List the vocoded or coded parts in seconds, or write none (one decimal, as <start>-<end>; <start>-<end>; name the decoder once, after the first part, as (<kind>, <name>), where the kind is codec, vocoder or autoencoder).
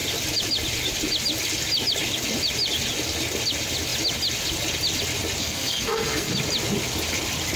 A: 5.4-6.3 (codec, SNAC)